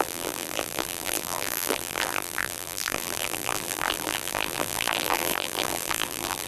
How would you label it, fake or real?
fake